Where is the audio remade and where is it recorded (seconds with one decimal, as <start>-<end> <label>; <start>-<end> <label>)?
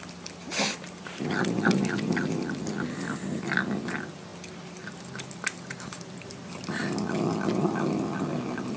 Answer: 0.0-8.8 recorded